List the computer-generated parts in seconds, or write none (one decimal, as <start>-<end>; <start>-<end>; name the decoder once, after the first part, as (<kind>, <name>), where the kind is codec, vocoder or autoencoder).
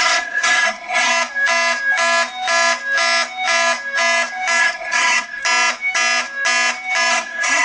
0.0-1.1 (codec, SNAC); 4.6-5.4; 7.1-7.6